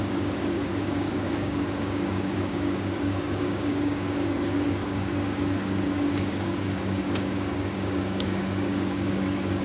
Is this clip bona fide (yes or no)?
no